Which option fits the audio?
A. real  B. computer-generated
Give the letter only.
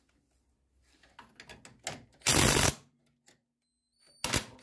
A